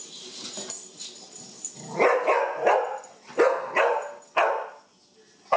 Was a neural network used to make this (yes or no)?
no